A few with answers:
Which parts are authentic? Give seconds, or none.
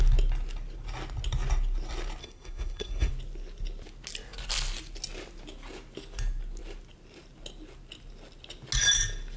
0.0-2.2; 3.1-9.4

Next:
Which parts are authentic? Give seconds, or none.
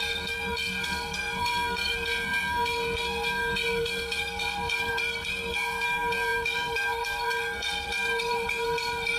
none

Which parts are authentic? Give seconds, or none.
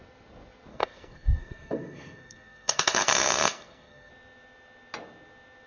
0.0-0.7; 4.1-5.7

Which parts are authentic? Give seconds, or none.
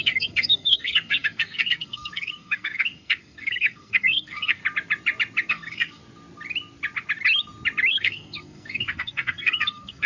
4.6-5.5; 6.0-7.9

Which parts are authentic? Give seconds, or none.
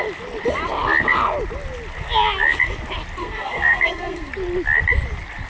0.0-3.2; 4.3-5.5